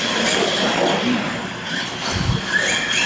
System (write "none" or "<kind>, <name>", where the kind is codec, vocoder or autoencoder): none